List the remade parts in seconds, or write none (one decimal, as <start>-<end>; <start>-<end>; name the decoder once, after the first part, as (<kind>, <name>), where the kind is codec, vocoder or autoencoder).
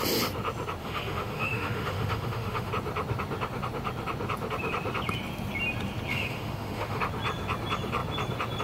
0.8-2.7 (autoencoder, DAC-VAE); 6.1-7.0